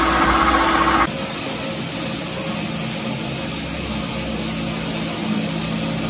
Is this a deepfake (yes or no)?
no